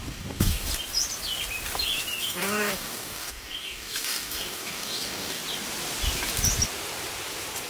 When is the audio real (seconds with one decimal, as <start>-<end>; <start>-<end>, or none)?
0.7-2.2; 5.4-7.7